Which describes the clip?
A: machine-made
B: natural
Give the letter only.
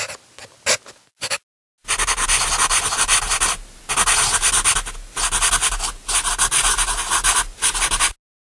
B